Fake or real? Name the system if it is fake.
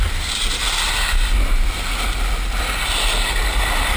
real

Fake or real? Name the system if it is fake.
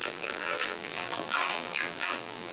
fake, vocoder, BigVGAN v2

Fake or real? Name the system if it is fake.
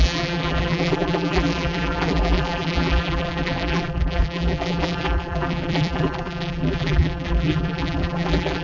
fake, vocoder, BigVGAN v2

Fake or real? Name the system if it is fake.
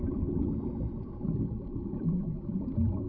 fake, vocoder, BigVGAN v2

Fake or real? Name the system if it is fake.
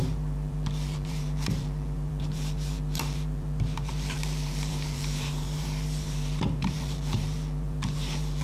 fake, vocoder, BigVGAN v2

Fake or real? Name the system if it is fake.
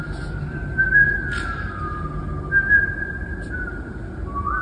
real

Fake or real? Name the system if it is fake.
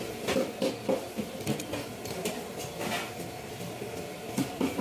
real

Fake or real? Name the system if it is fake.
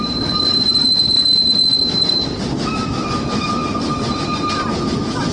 fake, vocoder, BigVGAN v2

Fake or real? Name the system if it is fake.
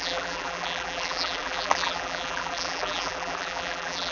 fake, vocoder, BigVGAN v2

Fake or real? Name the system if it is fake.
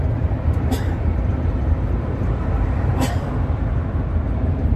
fake, vocoder, BigVGAN v2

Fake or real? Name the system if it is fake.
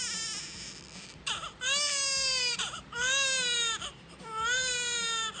fake, vocoder, BigVGAN v2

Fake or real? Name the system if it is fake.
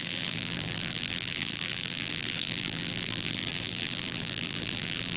fake, vocoder, BigVGAN v2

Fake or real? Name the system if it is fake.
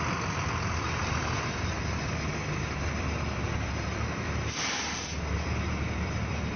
fake, vocoder, BigVGAN v2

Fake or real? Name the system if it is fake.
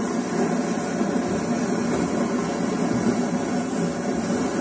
real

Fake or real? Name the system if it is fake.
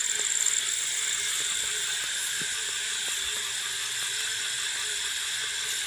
real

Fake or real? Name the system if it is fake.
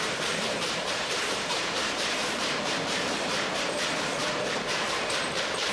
fake, vocoder, BigVGAN v2